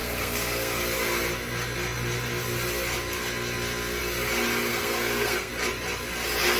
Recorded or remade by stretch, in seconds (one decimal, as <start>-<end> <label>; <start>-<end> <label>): 0.0-0.8 remade; 0.8-4.7 recorded; 4.7-5.5 remade; 5.5-6.6 recorded